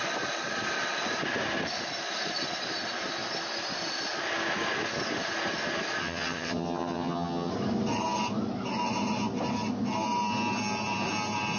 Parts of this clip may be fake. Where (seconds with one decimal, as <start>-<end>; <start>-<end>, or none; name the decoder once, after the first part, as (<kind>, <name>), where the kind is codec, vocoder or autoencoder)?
6.0-7.5 (vocoder, HiFi-GAN)